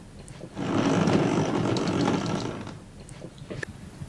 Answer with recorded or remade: recorded